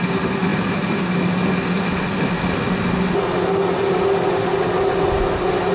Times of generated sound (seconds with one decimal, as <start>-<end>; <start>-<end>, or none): none